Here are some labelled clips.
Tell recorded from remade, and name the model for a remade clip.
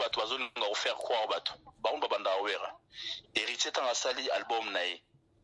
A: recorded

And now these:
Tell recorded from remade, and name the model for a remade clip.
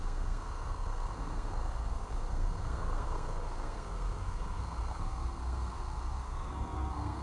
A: remade, codec, SNAC